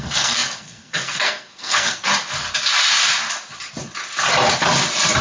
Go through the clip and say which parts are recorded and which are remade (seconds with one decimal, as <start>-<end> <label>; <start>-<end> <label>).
0.0-2.1 remade; 2.1-5.2 recorded